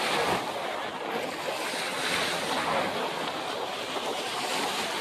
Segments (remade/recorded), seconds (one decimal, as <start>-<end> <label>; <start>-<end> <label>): 0.0-5.0 recorded